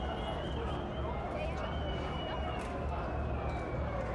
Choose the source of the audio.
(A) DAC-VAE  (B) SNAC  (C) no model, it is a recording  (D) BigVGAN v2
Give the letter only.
C